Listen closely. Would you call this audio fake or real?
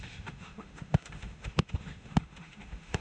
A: fake